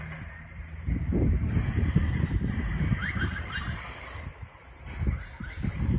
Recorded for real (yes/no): yes